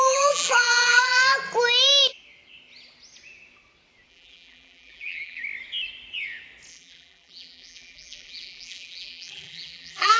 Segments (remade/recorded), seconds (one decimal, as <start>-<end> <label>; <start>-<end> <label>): 0.0-1.3 remade; 1.3-4.1 recorded; 4.1-5.4 remade; 5.4-6.7 recorded; 6.7-10.2 remade